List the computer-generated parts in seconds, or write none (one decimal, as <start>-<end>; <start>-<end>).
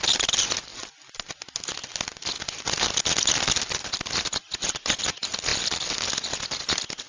none